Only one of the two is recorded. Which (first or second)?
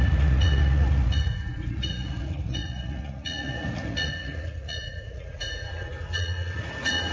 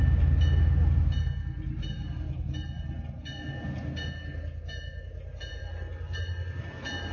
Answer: second